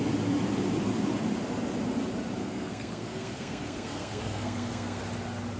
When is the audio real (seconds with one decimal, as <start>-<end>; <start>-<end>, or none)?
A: 0.0-2.4; 5.0-5.6